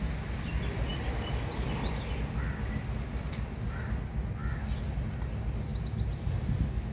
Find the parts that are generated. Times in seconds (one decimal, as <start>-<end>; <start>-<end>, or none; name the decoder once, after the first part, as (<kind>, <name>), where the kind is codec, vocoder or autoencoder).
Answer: none